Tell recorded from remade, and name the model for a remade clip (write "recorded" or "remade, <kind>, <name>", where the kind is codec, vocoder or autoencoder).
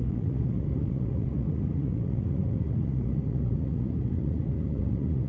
remade, vocoder, Vocos